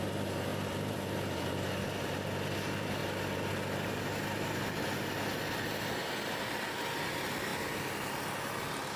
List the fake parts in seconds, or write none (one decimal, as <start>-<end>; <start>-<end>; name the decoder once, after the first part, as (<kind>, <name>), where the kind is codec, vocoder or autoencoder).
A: 0.5-1.8 (vocoder, BigVGAN v2); 7.5-8.3